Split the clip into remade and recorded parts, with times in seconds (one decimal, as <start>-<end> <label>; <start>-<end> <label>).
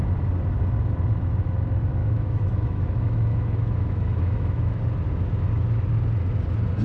0.0-2.0 recorded; 2.0-4.8 remade; 4.8-6.8 recorded